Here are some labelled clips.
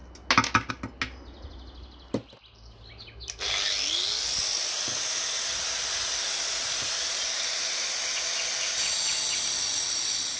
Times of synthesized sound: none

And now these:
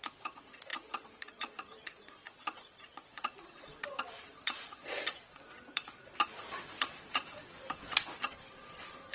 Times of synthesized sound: 0.0-9.1 (vocoder, Vocos)

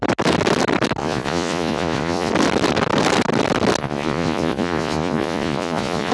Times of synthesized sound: 1.0-2.3 (vocoder, Vocos); 3.8-6.1